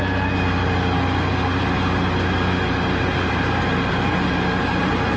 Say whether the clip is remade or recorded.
recorded